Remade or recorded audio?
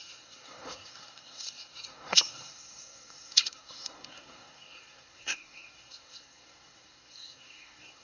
remade